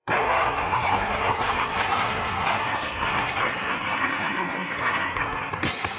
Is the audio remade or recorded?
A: remade